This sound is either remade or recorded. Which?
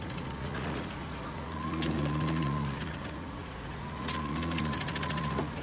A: remade